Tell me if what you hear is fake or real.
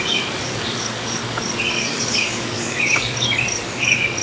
fake